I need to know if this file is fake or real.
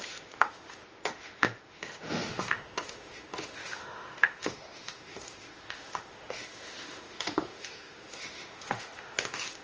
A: fake